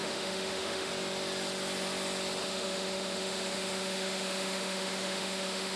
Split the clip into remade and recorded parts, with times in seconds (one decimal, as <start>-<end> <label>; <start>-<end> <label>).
0.0-0.9 remade; 0.9-2.4 recorded; 2.4-5.8 remade